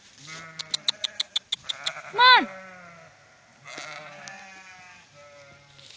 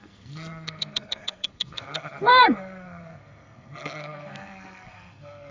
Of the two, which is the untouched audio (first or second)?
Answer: first